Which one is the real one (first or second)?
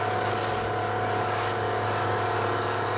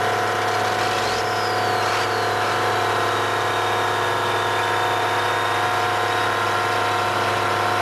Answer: second